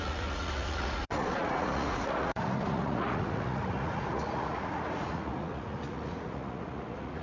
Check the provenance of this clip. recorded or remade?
remade